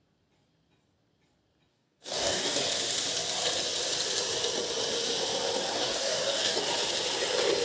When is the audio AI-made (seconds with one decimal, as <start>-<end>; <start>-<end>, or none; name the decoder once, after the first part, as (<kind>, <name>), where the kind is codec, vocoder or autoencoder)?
1.7-2.6 (codec, DAC); 5.7-6.6